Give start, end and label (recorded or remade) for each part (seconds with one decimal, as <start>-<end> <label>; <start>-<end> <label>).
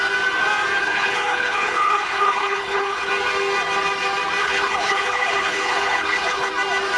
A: 0.0-0.8 recorded; 0.8-3.1 remade; 3.1-4.4 recorded; 4.4-6.5 remade; 6.5-7.0 recorded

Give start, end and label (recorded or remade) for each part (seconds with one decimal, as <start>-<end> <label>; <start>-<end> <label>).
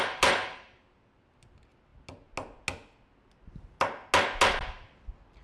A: 0.0-5.4 recorded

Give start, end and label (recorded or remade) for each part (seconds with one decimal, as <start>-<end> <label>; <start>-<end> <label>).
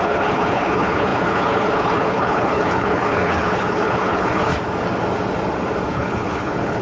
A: 0.0-4.5 remade; 4.5-5.9 recorded; 5.9-6.8 remade